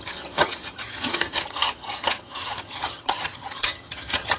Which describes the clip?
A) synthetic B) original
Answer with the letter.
A